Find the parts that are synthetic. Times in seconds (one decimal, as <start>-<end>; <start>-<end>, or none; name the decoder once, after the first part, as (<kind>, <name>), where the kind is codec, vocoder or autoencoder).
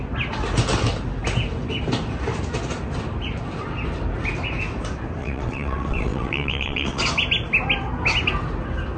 5.2-7.0 (vocoder, WaveNeXt)